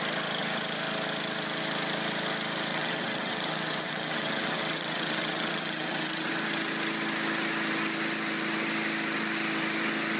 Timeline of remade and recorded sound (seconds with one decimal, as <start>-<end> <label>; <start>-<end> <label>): 0.0-2.7 recorded; 2.7-6.3 remade; 6.3-10.2 recorded